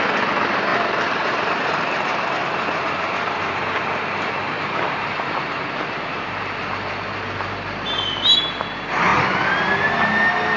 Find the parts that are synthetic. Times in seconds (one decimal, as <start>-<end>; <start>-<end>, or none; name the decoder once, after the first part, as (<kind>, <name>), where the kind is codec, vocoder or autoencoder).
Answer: 0.7-5.6 (vocoder, BigVGAN v2)